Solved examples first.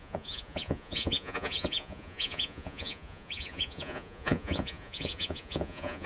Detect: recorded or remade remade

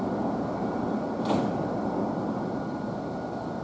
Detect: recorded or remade recorded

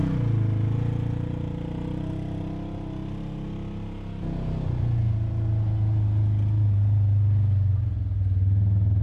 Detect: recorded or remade recorded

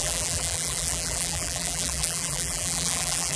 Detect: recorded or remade remade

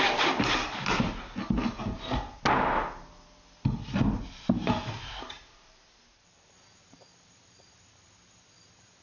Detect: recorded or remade recorded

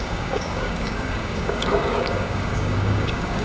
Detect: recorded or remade remade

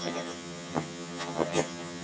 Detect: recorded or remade remade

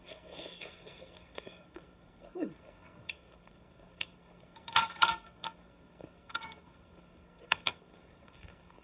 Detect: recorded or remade remade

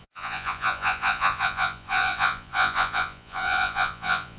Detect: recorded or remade remade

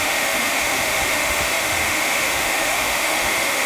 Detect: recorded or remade remade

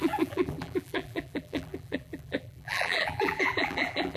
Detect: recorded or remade remade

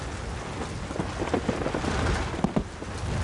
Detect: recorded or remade recorded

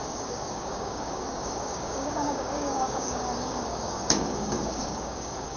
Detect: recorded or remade remade